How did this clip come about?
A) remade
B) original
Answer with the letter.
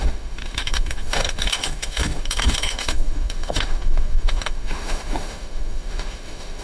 A